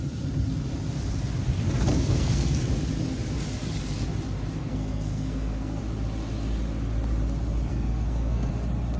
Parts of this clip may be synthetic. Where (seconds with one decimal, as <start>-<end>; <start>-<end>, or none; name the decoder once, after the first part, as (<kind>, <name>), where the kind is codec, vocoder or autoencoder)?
1.9-2.6 (codec, SNAC); 4.6-5.8; 7.7-8.5